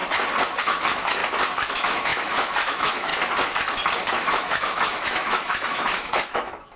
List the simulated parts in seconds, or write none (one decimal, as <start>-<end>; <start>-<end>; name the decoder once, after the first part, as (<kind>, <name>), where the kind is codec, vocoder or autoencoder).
0.6-1.2 (autoencoder, DAC-VAE); 1.7-3.1; 4.1-6.8